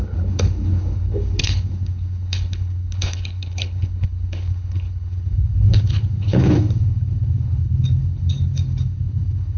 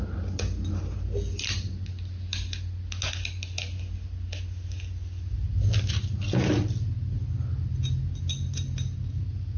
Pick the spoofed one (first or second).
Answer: first